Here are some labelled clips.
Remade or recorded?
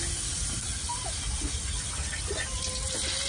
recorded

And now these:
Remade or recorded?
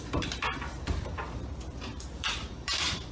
remade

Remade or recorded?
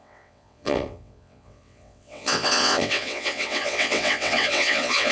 remade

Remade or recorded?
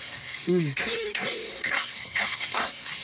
remade